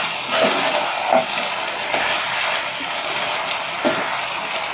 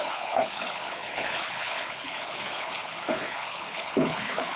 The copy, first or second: second